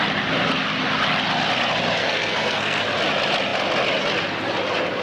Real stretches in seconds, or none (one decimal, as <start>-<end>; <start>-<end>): 0.0-2.0; 2.8-5.0